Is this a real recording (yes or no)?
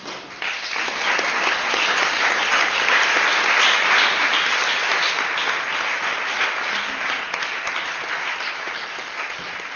yes